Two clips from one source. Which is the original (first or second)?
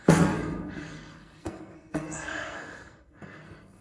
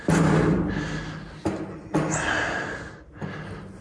second